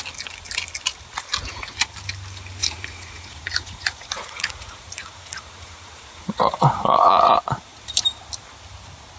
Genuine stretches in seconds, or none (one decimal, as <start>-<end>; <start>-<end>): 0.0-2.6; 7.3-9.2